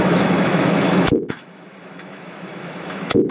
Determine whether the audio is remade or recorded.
remade